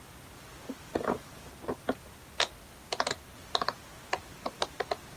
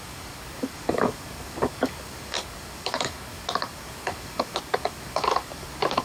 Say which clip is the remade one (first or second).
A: second